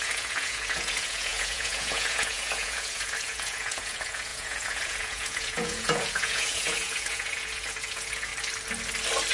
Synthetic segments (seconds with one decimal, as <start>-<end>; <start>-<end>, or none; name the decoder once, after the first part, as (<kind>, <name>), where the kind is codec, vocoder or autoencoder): 0.0-8.3 (vocoder, Vocos)